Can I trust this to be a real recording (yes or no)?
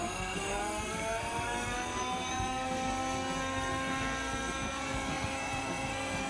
no